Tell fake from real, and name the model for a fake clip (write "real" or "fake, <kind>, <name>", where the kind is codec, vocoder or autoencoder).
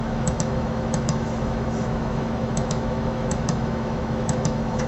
fake, autoencoder, DAC-VAE